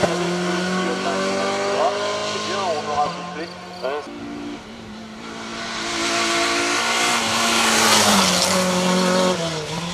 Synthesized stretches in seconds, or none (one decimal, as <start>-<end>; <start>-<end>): none